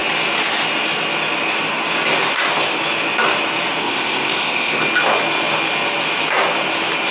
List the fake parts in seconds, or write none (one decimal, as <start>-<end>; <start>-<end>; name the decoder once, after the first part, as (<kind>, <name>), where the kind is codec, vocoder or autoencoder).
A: 3.8-4.8 (codec, ZipCodec)